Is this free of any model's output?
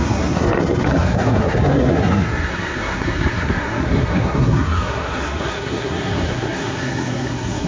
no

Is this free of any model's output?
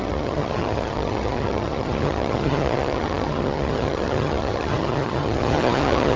no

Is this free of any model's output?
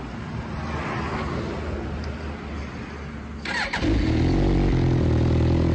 yes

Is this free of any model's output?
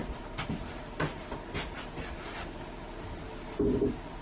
yes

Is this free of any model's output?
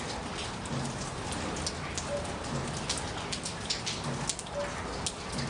yes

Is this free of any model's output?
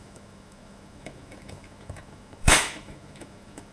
no